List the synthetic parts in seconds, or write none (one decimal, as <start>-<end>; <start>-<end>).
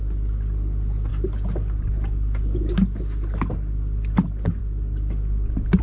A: none